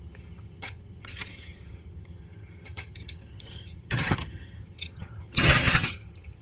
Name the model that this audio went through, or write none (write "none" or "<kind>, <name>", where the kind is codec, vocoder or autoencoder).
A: vocoder, HiFi-GAN